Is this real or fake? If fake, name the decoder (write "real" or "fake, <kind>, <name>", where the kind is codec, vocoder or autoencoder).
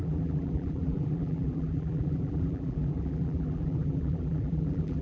fake, vocoder, BigVGAN v2